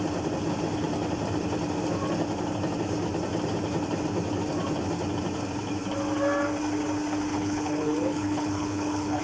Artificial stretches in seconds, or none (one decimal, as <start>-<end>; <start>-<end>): 7.3-9.2